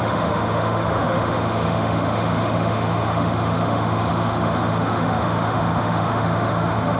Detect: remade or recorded remade